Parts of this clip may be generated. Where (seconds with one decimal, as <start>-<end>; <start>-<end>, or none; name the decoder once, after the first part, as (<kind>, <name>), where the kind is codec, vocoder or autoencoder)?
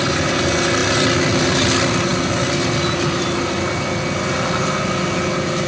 none